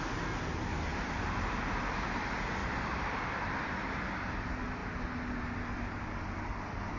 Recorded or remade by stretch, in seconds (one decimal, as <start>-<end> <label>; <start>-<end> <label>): 0.0-0.9 recorded; 0.9-1.6 remade; 1.6-2.6 recorded; 2.6-3.3 remade; 3.3-7.0 recorded